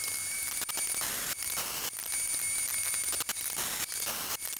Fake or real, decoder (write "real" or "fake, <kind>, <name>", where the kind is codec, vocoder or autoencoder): real